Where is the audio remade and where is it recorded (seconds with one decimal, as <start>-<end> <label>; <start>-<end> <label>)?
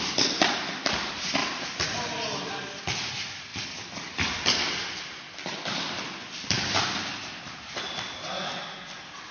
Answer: 0.0-1.4 recorded; 1.4-2.5 remade; 2.5-9.3 recorded